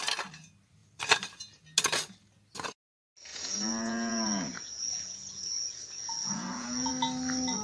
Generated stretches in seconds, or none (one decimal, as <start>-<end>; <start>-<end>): 3.3-6.9